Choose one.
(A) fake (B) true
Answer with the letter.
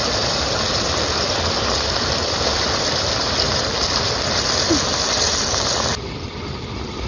B